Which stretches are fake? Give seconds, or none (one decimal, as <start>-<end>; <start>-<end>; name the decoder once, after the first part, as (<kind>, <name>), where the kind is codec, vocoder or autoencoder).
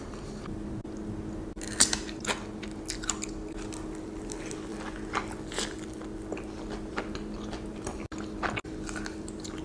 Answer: none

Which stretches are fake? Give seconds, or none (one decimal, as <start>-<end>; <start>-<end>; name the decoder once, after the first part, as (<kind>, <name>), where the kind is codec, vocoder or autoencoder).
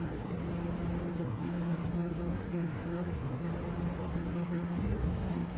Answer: 0.0-0.4 (codec, SNAC); 1.1-3.5; 4.0-5.6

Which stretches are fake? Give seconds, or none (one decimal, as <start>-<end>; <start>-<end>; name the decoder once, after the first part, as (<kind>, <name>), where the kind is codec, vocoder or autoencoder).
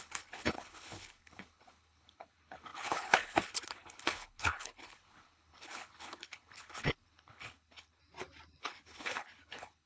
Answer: 0.0-8.0 (codec, HILCodec); 8.6-9.9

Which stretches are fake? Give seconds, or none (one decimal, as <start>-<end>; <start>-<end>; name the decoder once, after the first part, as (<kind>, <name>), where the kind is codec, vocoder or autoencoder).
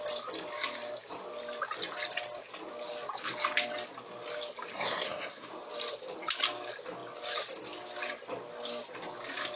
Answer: 4.7-5.5 (codec, SNAC)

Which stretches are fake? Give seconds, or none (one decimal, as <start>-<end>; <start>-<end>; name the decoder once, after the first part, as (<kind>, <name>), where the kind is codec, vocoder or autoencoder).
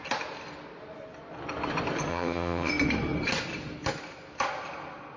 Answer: 2.1-2.7 (vocoder, HiFi-GAN)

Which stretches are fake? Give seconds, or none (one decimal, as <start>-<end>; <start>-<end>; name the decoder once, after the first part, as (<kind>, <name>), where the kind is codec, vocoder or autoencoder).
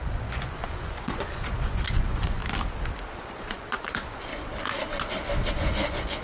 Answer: 0.0-2.4 (vocoder, Vocos); 3.2-4.3; 5.5-6.2